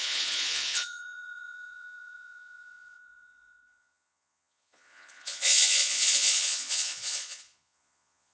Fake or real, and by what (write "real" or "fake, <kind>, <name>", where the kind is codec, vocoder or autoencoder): fake, vocoder, Vocos